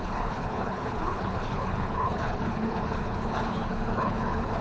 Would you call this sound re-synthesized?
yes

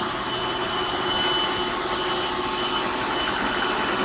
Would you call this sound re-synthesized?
no